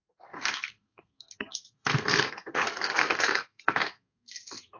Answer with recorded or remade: remade